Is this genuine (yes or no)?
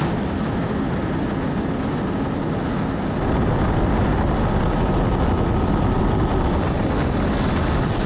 yes